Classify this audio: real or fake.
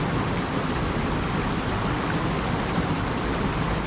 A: real